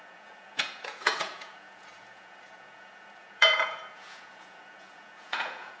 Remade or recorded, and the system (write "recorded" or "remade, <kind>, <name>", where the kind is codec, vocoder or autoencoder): remade, vocoder, Vocos